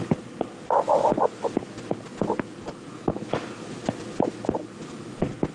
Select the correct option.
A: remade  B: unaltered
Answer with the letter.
B